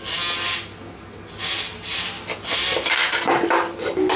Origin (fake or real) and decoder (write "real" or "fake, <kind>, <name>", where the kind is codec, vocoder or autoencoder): real